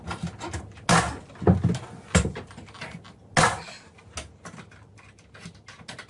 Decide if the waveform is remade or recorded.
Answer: recorded